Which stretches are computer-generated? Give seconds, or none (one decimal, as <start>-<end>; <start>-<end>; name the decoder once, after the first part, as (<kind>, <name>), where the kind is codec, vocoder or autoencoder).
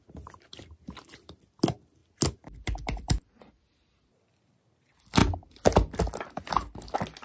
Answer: none